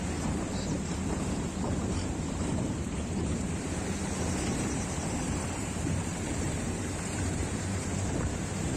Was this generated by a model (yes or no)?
yes